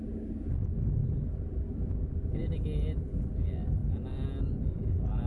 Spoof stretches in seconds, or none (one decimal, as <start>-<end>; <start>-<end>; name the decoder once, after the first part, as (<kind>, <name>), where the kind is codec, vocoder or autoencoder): none